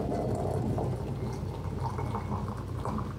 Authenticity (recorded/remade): recorded